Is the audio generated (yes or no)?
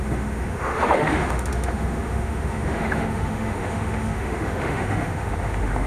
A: yes